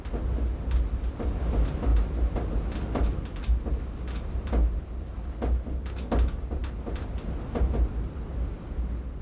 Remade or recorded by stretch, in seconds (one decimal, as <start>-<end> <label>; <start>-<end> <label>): 0.0-9.2 recorded